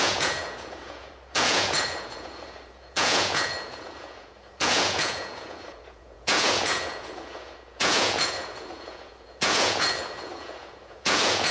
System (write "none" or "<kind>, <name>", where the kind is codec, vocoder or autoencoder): vocoder, Vocos